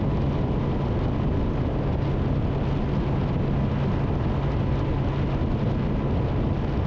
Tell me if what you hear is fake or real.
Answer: real